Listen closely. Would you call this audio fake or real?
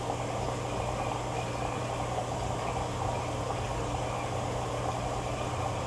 real